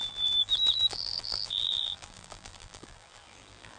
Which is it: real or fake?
fake